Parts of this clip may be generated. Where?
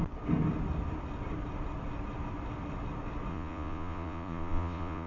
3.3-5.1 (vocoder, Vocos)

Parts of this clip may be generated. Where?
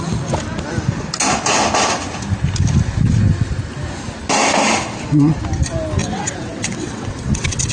6.0-7.7 (vocoder, WaveNeXt)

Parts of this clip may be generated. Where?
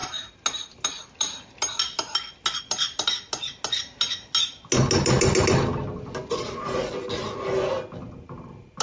none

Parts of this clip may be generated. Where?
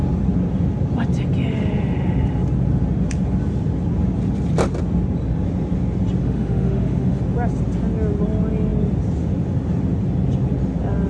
6.2-7.2 (autoencoder, DAC-VAE)